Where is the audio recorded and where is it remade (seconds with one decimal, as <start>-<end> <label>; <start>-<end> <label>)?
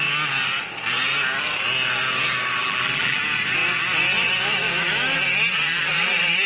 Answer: 0.0-2.6 recorded; 2.6-3.2 remade; 3.2-6.5 recorded